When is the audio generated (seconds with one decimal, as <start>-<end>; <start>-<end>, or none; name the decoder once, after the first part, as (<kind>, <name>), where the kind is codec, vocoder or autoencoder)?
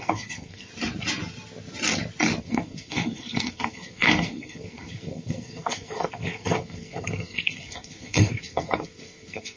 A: 0.0-0.7 (codec, SNAC); 2.4-9.6